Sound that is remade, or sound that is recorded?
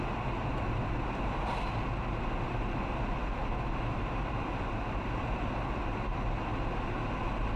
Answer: recorded